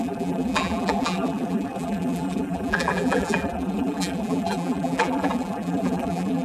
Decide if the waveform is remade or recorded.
remade